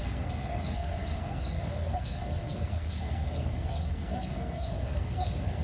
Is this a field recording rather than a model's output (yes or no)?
no